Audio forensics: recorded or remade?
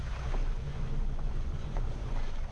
remade